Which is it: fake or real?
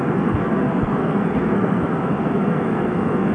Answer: fake